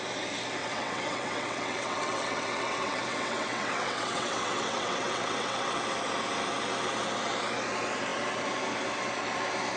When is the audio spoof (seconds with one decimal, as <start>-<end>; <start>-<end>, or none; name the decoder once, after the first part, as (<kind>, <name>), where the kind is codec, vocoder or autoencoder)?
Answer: 0.6-5.7 (vocoder, WaveNeXt)